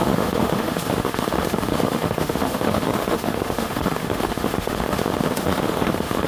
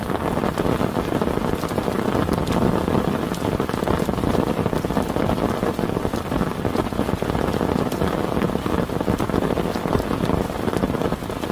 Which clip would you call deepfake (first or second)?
first